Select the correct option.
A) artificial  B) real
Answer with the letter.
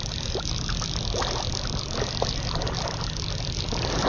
B